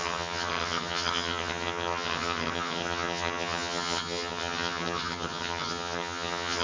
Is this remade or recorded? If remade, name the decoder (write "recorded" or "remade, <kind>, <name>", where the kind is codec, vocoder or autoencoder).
remade, vocoder, HiFi-GAN